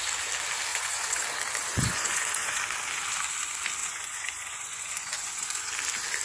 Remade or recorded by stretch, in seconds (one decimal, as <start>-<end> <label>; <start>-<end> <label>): 0.0-0.7 recorded; 0.7-1.2 remade; 1.2-1.7 recorded; 1.7-2.6 remade; 2.6-3.8 recorded; 3.8-5.7 remade; 5.7-6.2 recorded